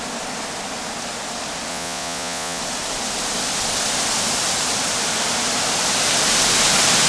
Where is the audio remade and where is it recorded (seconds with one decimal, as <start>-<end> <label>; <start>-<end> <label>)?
0.0-1.7 recorded; 1.7-2.6 remade; 2.6-7.1 recorded